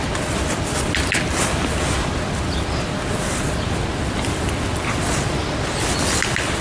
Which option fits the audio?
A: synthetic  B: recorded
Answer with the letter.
B